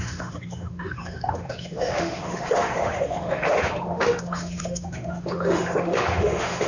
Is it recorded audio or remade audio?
remade